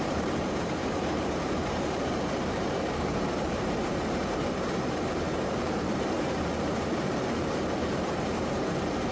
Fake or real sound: fake